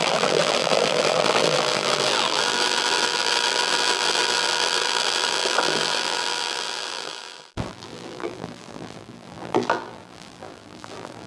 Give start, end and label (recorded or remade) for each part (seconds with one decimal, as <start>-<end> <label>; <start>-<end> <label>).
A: 0.0-11.3 remade

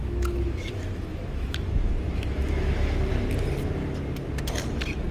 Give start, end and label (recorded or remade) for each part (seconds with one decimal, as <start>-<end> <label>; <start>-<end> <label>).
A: 0.0-3.1 remade; 3.1-5.1 recorded

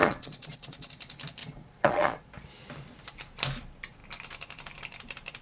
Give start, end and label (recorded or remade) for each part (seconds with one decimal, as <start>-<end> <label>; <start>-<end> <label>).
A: 0.0-0.9 remade; 0.9-1.4 recorded; 1.4-2.2 remade; 2.2-5.4 recorded

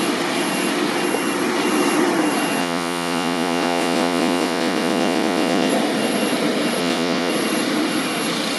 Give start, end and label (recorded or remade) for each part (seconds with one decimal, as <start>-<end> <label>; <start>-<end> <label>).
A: 0.0-2.6 recorded; 2.6-5.7 remade; 5.7-6.8 recorded; 6.8-7.3 remade; 7.3-8.6 recorded

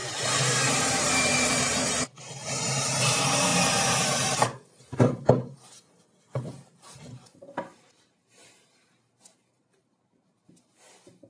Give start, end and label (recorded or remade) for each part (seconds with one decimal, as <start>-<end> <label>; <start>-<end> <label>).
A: 0.0-11.3 remade

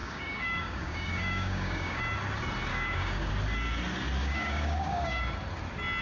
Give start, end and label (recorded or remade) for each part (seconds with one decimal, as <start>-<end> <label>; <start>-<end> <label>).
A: 0.0-2.0 remade; 2.0-2.7 recorded; 2.7-3.3 remade; 3.3-4.2 recorded; 4.2-5.2 remade; 5.2-6.0 recorded

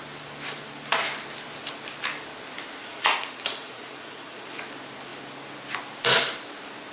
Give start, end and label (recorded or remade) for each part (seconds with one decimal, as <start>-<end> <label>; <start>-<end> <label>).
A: 0.0-2.8 recorded; 2.8-4.6 remade; 4.6-6.9 recorded

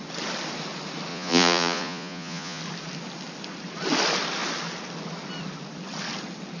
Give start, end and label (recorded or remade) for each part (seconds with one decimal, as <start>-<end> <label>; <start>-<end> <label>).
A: 0.0-1.1 recorded; 1.1-2.6 remade; 2.6-6.6 recorded